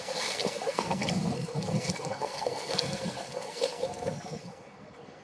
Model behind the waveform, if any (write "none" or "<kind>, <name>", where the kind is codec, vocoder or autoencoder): codec, SNAC